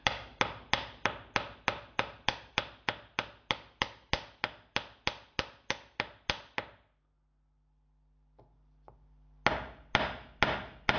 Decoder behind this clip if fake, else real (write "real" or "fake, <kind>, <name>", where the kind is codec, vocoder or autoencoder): real